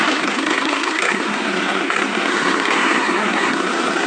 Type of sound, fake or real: fake